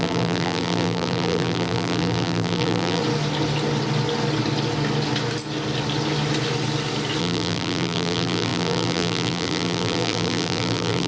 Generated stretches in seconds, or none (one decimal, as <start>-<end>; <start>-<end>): 0.0-3.0; 7.2-11.1